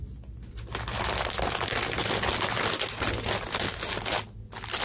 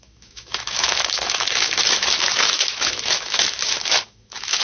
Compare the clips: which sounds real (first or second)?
first